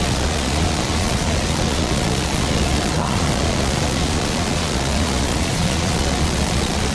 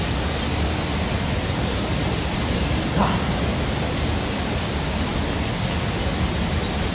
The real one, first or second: second